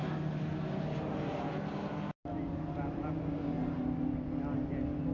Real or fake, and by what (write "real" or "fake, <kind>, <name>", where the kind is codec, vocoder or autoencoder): real